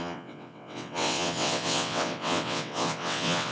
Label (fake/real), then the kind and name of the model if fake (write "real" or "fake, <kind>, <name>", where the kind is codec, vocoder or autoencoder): fake, vocoder, WaveNeXt